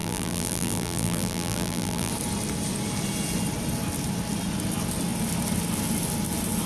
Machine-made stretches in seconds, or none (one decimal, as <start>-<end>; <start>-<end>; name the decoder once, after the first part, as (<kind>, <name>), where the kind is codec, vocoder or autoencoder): 0.0-2.1 (vocoder, BigVGAN v2)